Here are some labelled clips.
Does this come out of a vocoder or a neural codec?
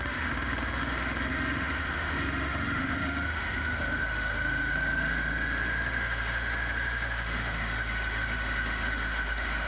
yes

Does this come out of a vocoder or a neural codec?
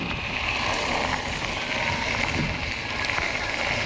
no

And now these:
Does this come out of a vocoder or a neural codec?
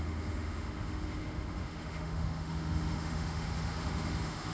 yes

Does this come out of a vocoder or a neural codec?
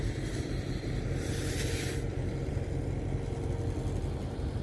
no